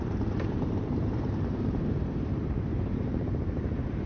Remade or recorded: remade